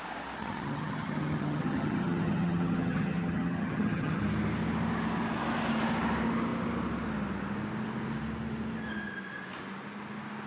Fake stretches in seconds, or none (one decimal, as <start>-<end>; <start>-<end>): 0.4-4.2